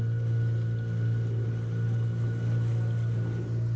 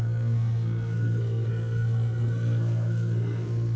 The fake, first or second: second